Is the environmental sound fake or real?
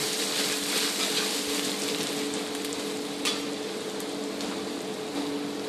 real